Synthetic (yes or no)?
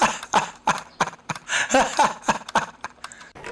no